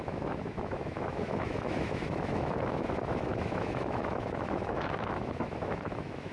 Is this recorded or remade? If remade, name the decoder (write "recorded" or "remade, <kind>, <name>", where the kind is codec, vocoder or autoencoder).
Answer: remade, autoencoder, DAC-VAE